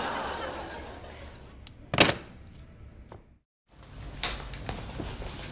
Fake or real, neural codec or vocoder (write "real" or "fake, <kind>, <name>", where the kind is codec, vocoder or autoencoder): real